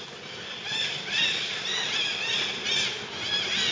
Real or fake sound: real